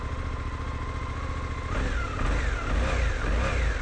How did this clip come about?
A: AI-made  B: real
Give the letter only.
B